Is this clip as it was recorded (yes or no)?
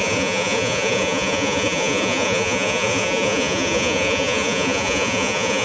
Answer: no